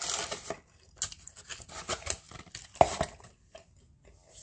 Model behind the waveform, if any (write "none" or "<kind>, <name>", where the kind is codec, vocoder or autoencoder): none